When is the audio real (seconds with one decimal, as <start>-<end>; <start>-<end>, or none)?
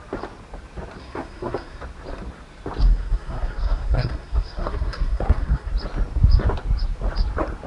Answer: 0.0-1.0; 1.8-2.8; 5.7-7.7